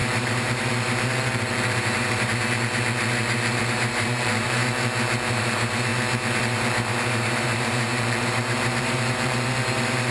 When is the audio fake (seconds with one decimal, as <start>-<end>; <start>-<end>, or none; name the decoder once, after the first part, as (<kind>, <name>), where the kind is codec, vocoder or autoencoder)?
0.0-2.3 (vocoder, BigVGAN v2); 3.6-4.6; 5.3-5.9; 6.4-10.1